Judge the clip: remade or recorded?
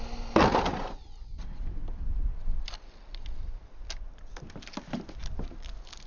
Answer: recorded